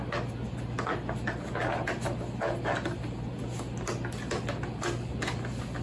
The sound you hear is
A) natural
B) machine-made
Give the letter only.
A